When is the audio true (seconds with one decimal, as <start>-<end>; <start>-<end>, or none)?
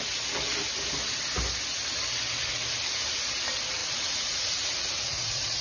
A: 0.0-3.8